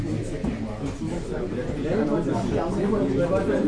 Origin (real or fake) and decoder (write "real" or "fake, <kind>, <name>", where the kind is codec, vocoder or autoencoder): real